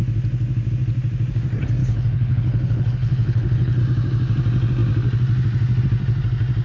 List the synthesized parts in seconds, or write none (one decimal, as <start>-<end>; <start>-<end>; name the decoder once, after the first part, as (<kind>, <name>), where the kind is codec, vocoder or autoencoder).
1.8-3.8 (codec, HILCodec)